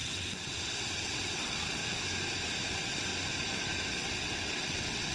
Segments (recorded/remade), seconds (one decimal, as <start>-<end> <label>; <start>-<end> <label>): 0.0-1.8 remade; 1.8-2.7 recorded; 2.7-3.1 remade; 3.1-3.9 recorded; 3.9-5.1 remade

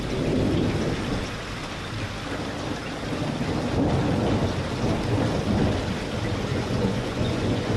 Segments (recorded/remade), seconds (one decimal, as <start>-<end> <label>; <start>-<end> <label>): 0.0-6.5 recorded; 6.5-7.8 remade

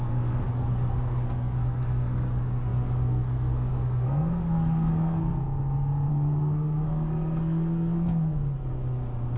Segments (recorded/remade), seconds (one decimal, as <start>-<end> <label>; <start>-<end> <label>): 0.0-5.3 remade; 5.3-6.1 recorded; 6.1-8.4 remade; 8.4-9.4 recorded